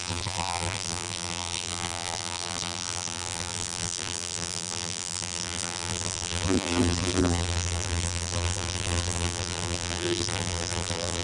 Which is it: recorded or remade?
remade